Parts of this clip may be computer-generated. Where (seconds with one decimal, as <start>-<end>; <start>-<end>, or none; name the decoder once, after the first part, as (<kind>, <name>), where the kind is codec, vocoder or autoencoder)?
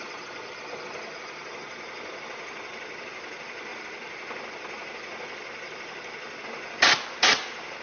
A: none